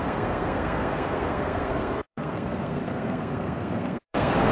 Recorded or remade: remade